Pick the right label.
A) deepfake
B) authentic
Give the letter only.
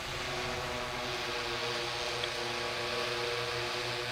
B